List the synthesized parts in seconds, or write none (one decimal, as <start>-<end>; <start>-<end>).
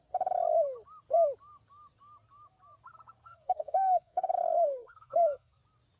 3.2-5.6